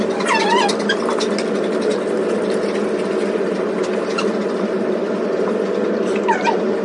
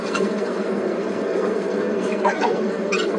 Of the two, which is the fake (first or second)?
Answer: second